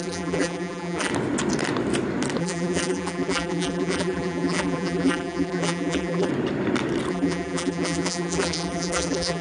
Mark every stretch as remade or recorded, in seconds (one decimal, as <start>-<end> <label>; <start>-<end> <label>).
0.0-1.1 remade; 1.1-2.4 recorded; 2.4-6.3 remade; 6.3-7.1 recorded; 7.1-9.4 remade